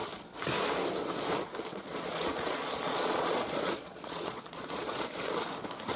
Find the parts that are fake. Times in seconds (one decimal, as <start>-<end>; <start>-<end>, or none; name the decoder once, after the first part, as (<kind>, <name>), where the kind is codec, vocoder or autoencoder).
1.7-5.3 (vocoder, Vocos)